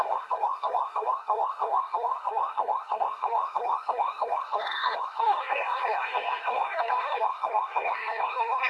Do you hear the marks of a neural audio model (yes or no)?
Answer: yes